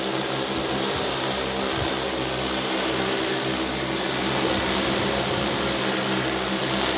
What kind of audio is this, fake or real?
real